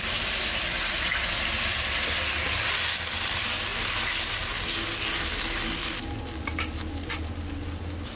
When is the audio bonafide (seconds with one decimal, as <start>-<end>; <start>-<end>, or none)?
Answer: 0.0-8.2